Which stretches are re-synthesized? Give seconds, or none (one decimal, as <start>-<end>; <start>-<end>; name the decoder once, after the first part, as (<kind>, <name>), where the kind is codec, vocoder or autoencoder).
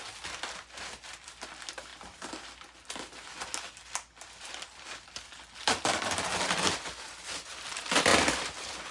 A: none